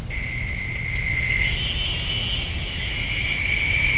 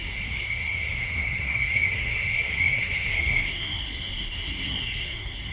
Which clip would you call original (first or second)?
first